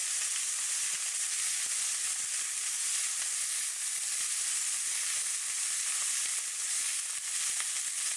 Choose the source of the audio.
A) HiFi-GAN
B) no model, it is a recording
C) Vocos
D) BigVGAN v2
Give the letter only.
B